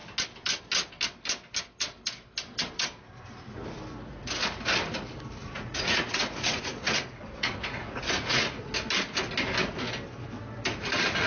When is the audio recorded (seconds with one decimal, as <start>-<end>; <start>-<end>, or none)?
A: 0.0-5.4; 8.7-11.3

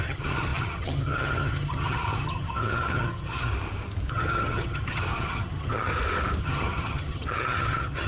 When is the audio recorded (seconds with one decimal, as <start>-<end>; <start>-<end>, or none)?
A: 3.5-4.1; 5.9-6.4

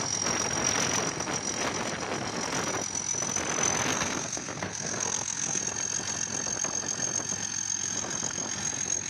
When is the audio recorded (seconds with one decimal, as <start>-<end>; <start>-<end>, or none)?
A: 0.0-3.9; 5.6-9.1

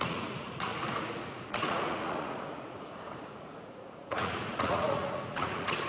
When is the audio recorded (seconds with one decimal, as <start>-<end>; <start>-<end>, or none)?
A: none

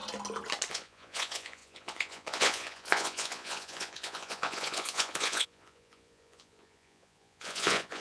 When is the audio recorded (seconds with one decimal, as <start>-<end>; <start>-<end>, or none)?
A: 0.0-0.7

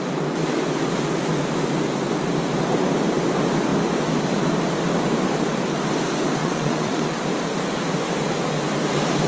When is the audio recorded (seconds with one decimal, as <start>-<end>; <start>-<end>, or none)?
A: 0.0-6.4; 7.2-9.3

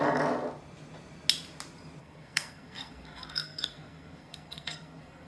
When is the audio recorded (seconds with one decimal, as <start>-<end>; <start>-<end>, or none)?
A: 0.0-2.0

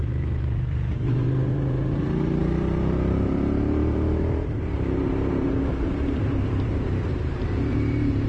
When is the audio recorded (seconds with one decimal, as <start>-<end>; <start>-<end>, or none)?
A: none